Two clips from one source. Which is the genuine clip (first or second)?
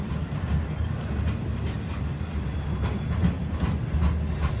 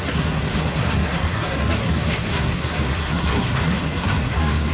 first